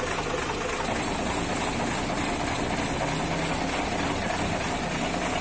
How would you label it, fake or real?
real